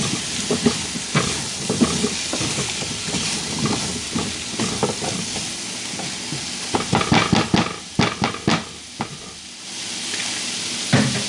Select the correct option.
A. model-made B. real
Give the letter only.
B